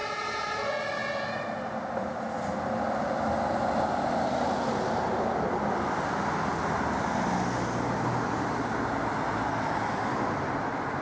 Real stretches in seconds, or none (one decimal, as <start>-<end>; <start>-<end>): 0.7-11.0